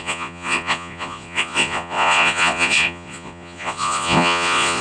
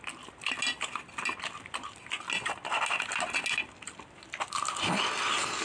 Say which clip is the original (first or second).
second